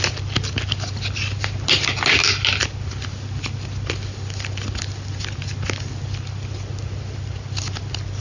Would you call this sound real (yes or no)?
yes